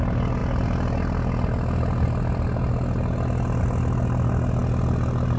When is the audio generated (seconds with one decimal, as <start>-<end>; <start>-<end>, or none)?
none